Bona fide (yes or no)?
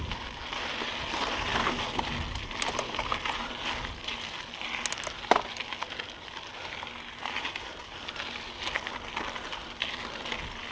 yes